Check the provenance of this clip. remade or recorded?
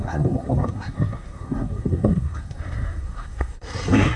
remade